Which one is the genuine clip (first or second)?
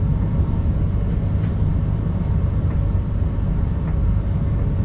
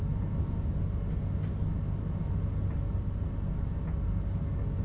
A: second